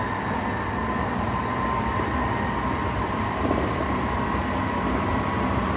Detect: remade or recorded recorded